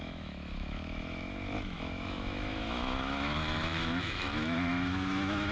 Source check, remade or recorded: remade